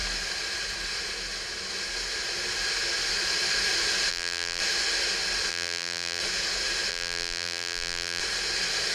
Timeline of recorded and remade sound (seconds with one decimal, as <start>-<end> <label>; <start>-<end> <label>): 0.0-4.1 recorded; 4.1-4.6 remade; 4.6-5.5 recorded; 5.5-6.2 remade; 6.2-6.9 recorded; 6.9-8.2 remade; 8.2-8.9 recorded